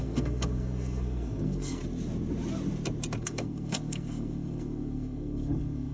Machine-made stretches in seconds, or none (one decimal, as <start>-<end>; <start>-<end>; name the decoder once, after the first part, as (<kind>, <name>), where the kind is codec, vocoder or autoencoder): 0.0-1.8 (codec, SNAC); 3.2-5.9